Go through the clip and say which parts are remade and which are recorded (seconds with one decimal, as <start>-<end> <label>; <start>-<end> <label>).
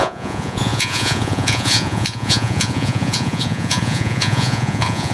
0.0-5.1 remade